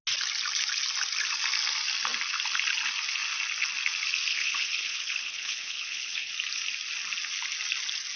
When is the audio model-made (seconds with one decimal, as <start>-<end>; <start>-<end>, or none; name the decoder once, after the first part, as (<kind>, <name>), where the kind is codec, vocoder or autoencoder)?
4.3-6.3 (codec, HILCodec)

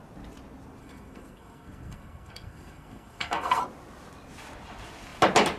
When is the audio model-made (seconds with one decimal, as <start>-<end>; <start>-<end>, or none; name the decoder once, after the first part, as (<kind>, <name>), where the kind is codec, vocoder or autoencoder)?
0.8-3.6 (codec, SNAC)

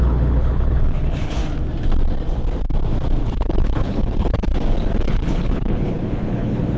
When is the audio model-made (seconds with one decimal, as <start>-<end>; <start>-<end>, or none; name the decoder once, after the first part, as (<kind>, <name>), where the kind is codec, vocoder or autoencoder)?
0.0-1.4 (codec, HILCodec); 3.2-4.5; 5.0-6.8

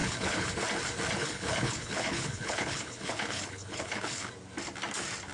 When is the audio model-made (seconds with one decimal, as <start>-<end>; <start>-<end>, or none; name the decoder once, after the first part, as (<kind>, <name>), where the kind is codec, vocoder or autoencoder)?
0.0-0.5 (codec, HILCodec); 1.2-4.3

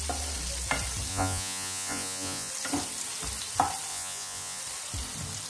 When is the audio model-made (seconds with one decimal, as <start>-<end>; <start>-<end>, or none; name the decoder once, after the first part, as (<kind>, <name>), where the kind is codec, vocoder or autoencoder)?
1.1-2.5 (vocoder, Vocos); 3.9-4.6

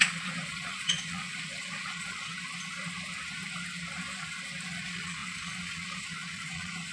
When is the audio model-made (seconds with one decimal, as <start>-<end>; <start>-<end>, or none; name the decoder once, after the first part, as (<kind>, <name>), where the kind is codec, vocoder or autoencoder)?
0.0-2.3 (vocoder, Vocos); 4.7-6.9

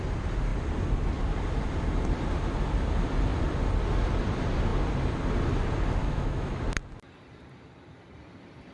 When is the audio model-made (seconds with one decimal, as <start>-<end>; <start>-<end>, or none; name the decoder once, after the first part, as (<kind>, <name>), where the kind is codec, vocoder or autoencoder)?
6.0-6.6 (autoencoder, DAC-VAE)

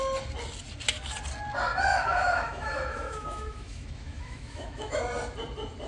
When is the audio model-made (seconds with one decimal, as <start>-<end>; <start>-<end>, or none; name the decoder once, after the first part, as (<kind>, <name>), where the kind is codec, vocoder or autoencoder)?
1.9-5.0 (autoencoder, DAC-VAE)